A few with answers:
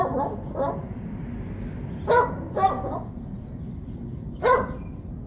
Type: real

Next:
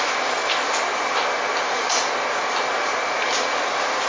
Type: real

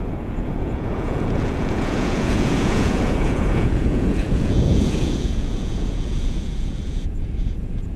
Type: fake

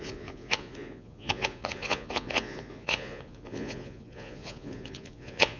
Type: fake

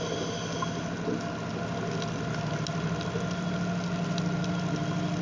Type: real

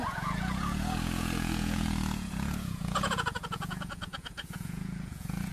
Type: fake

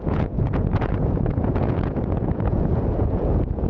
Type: fake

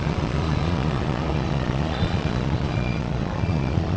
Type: fake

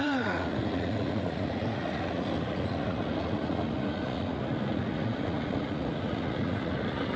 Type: fake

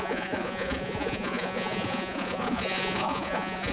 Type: fake